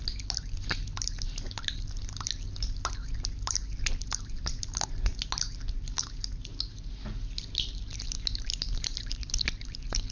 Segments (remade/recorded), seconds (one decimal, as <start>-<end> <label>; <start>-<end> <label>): 0.0-10.1 recorded